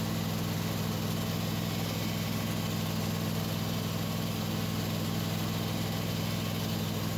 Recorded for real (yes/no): yes